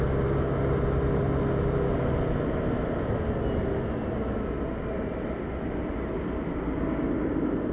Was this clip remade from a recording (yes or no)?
no